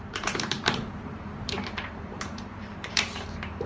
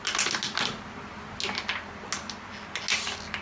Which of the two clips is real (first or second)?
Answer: second